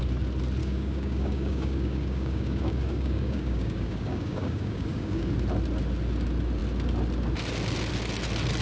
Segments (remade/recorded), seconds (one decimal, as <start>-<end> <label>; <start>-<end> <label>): 0.0-0.6 recorded; 0.6-5.3 remade; 5.3-8.6 recorded